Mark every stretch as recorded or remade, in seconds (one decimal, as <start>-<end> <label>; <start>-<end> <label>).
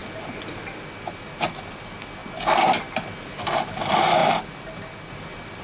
0.0-5.6 recorded